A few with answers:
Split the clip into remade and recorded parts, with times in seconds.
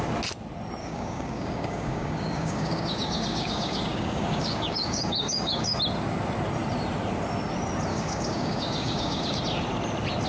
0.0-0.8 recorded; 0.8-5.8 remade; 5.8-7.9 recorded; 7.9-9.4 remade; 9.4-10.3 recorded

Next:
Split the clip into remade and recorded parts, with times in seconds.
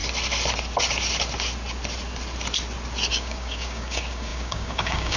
0.0-3.1 recorded; 3.1-5.2 remade